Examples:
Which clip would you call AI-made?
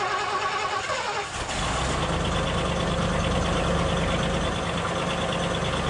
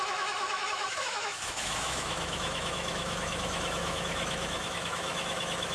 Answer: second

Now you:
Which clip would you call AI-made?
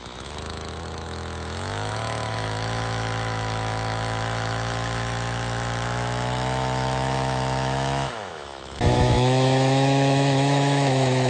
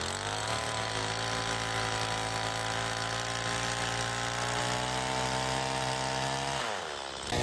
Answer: first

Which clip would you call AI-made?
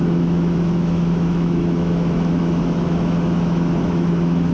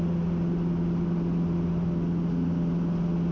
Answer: first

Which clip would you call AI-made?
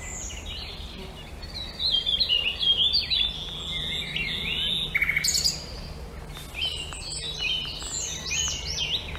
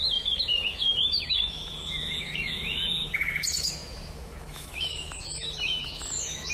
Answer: second